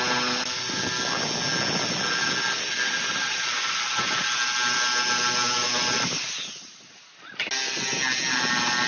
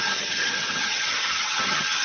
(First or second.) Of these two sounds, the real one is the first